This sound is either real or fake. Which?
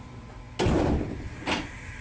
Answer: real